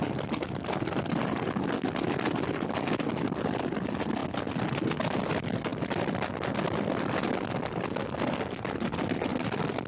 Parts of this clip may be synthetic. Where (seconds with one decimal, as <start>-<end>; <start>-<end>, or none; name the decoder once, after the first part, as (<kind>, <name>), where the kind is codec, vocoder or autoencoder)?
none